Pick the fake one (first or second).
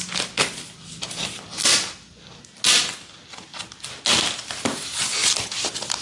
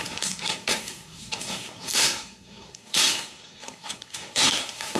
second